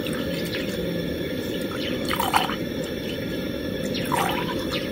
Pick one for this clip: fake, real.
real